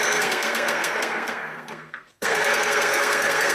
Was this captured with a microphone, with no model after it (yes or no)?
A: no